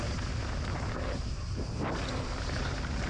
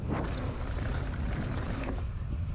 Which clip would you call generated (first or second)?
second